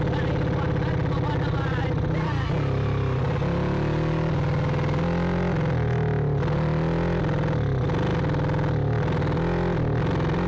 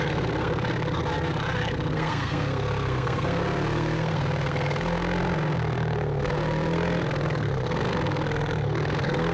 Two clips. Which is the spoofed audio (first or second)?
second